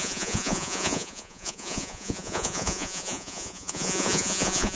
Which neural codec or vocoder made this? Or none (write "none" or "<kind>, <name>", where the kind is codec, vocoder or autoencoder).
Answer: vocoder, Vocos